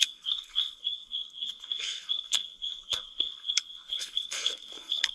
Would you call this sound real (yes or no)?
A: no